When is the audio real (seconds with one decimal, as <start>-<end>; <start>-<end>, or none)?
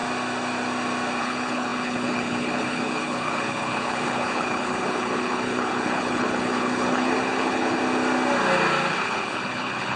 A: 0.0-1.2; 7.8-8.9